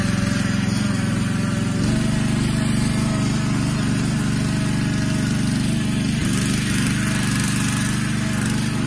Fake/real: real